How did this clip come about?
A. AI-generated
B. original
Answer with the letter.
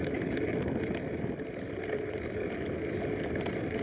B